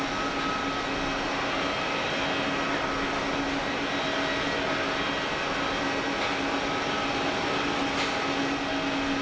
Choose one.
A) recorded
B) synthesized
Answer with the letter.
A